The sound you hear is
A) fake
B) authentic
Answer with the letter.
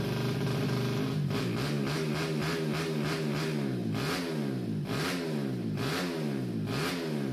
B